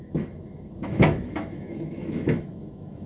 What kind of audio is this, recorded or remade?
remade